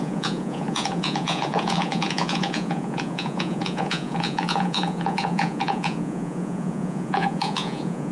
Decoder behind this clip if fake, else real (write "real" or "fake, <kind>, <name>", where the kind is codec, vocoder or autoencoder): fake, vocoder, Vocos